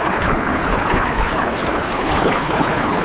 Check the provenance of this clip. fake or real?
fake